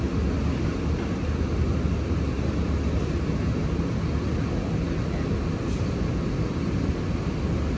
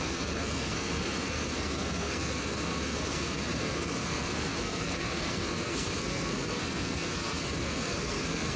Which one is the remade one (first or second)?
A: second